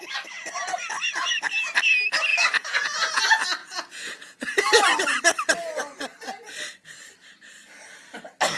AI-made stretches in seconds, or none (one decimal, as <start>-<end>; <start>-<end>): 2.3-3.2; 3.6-4.6